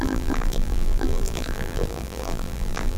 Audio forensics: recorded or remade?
remade